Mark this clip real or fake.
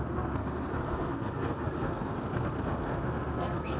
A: fake